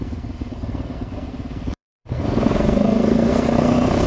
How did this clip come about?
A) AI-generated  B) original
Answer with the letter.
A